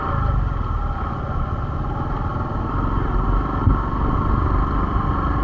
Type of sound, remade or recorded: recorded